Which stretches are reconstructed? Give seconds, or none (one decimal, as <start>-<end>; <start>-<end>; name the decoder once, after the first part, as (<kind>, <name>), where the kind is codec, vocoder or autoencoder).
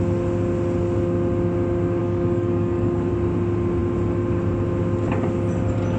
2.0-3.1 (codec, DAC)